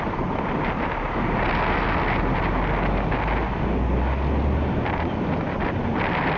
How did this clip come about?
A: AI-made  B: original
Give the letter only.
B